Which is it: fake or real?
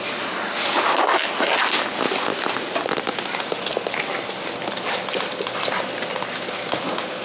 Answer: real